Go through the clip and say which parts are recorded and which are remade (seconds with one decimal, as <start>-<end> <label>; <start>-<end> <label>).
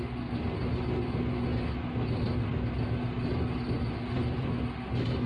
0.0-5.3 recorded